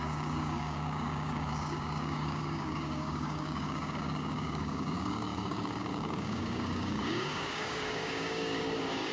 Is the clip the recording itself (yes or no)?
no